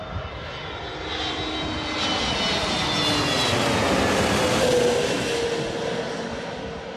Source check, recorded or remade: recorded